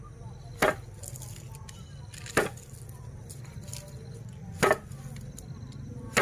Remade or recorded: recorded